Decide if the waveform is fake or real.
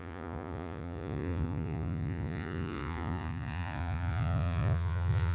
fake